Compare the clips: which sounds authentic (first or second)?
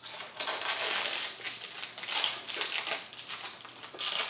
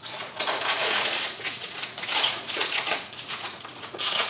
first